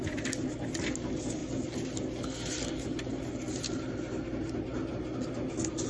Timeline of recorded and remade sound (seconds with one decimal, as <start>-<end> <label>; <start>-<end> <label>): 0.0-5.9 recorded